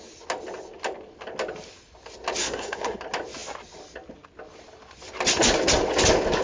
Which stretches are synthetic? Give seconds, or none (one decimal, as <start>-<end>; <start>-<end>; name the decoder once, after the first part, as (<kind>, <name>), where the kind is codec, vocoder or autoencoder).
2.4-3.0 (codec, SNAC)